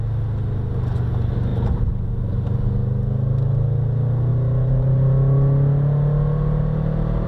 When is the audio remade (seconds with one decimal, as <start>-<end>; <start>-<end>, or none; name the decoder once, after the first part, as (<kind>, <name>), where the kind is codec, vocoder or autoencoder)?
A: none

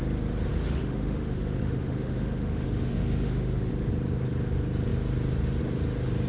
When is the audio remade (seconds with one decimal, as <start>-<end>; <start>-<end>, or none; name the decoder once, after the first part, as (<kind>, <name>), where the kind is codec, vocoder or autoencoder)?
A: 0.5-3.7 (autoencoder, DAC-VAE)